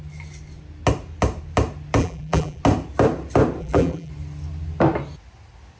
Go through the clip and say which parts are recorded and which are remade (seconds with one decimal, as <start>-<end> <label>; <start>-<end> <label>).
0.0-2.0 recorded; 2.0-2.6 remade; 2.6-3.6 recorded; 3.6-4.1 remade; 4.1-5.8 recorded